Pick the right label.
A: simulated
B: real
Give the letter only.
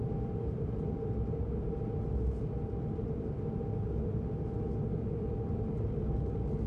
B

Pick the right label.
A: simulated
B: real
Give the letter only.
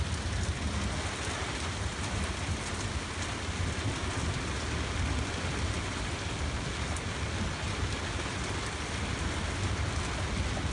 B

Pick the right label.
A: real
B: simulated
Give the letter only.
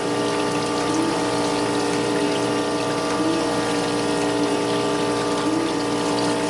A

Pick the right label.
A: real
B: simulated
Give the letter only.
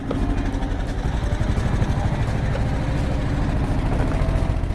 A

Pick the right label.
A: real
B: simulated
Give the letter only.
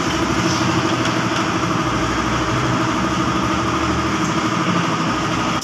A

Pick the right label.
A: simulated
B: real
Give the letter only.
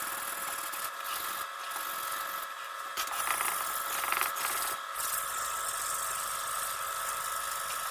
B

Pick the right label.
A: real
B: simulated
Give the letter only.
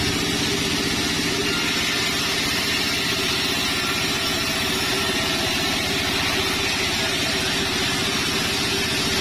A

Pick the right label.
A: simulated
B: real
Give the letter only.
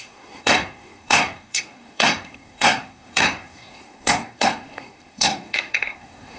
A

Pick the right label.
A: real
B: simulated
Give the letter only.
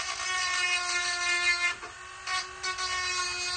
A